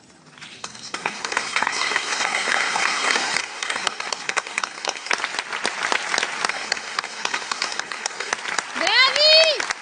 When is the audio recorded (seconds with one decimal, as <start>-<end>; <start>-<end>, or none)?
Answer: 0.0-0.6; 5.1-6.5; 8.3-9.8